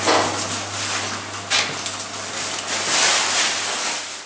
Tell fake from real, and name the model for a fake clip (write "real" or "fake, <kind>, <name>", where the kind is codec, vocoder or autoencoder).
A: real